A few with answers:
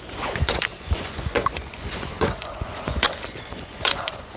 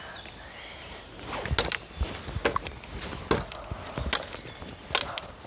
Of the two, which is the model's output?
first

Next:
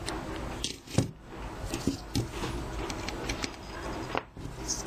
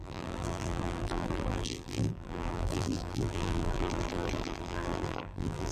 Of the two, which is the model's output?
second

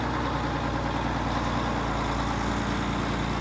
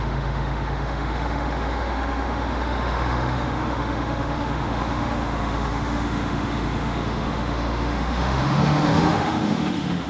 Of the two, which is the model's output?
second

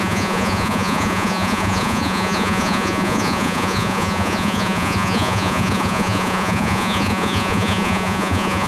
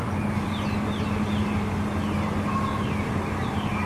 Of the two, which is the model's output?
first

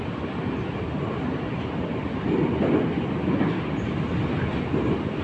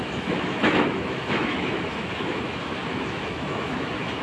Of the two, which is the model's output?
second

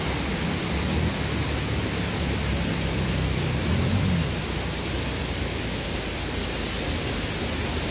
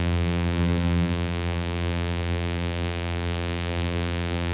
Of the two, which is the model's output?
second